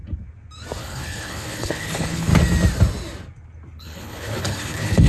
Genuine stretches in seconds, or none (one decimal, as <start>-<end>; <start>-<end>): 0.0-0.8; 2.3-3.8